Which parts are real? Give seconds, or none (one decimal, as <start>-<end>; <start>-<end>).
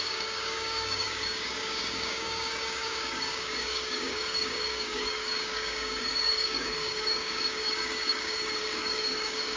none